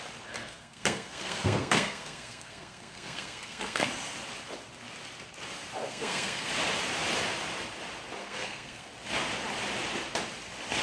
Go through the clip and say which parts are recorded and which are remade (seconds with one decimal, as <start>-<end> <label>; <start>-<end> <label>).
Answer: 0.0-0.4 recorded; 0.4-3.9 remade; 3.9-5.8 recorded; 5.8-6.5 remade; 6.5-8.2 recorded; 8.2-8.9 remade; 8.9-10.8 recorded